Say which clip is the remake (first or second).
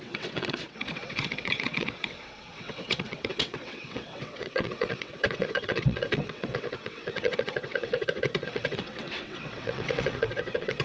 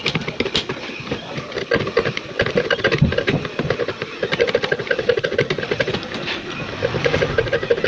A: first